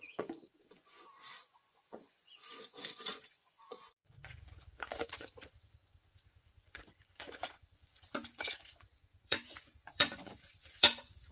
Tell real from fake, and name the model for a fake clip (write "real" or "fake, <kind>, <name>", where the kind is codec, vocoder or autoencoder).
fake, vocoder, Vocos